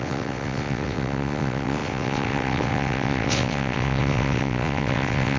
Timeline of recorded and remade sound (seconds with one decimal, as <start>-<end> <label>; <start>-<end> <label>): 0.0-5.4 remade